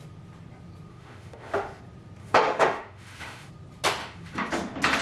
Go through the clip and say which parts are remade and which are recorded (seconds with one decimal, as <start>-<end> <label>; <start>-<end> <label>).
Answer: 0.0-0.9 recorded; 0.9-1.8 remade; 1.8-2.2 recorded; 2.2-3.5 remade; 3.5-4.0 recorded; 4.0-4.5 remade; 4.5-5.0 recorded